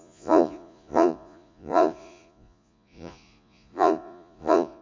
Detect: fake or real fake